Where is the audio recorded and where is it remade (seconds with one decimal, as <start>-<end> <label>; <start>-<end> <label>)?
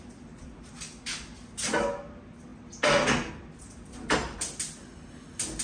0.0-5.6 recorded